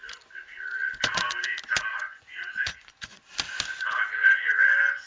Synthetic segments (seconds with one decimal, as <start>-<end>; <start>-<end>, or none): 1.9-3.2; 4.2-5.1